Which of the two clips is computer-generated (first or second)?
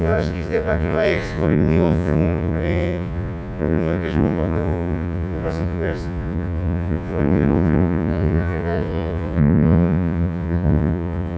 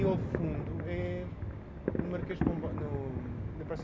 first